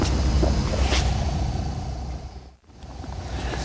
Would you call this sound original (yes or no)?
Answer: yes